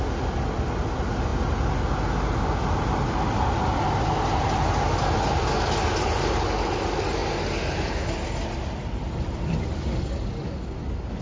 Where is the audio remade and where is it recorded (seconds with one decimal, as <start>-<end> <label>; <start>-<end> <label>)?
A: 0.0-11.2 recorded